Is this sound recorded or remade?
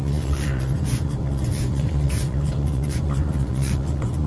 remade